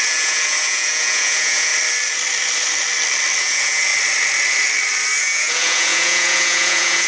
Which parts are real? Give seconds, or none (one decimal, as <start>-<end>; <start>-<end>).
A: 1.7-3.4; 3.9-5.2